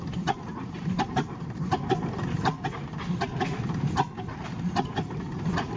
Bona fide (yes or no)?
no